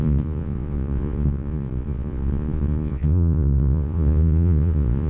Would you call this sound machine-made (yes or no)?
yes